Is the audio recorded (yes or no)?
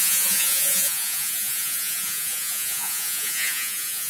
no